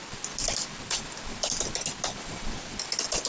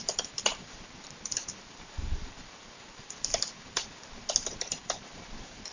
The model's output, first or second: second